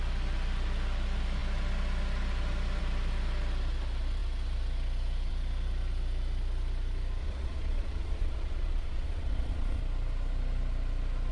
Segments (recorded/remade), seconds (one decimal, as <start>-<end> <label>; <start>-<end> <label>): 0.0-7.2 recorded; 7.2-9.8 remade; 9.8-11.3 recorded